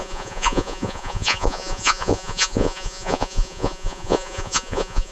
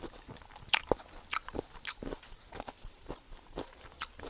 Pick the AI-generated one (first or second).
first